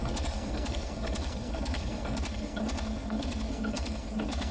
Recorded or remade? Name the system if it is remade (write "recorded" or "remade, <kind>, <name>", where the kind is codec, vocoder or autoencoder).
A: remade, codec, SNAC